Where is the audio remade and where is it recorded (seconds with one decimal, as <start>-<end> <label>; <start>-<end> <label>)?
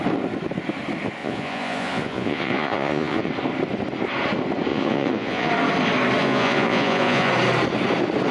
0.0-1.2 recorded; 1.2-3.3 remade; 3.3-4.7 recorded; 4.7-5.5 remade; 5.5-6.2 recorded; 6.2-7.3 remade; 7.3-8.3 recorded